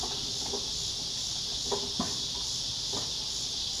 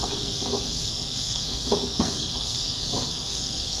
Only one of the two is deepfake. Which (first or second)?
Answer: second